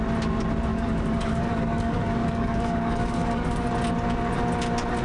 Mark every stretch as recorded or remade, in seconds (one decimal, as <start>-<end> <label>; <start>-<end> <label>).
0.0-0.7 recorded; 0.7-3.7 remade; 3.7-5.0 recorded